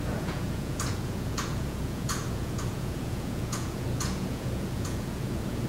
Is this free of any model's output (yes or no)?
no